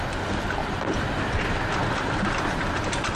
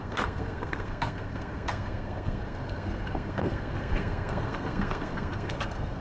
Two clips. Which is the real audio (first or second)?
first